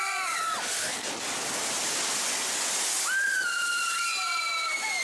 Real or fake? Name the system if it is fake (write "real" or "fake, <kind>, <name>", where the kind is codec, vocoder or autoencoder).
real